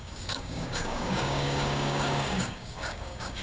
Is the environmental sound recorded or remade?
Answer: remade